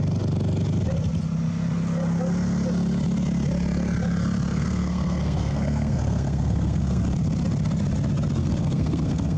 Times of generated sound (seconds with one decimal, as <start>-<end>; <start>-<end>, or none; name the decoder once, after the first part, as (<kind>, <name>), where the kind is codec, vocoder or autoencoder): 4.5-7.0 (codec, SNAC); 8.4-9.4